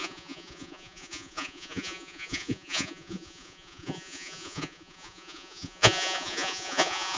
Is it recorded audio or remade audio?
remade